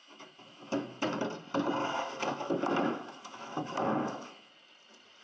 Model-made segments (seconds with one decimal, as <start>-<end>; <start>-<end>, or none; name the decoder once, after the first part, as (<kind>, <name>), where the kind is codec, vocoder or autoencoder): 0.0-1.2 (autoencoder, DAC-VAE); 1.8-4.5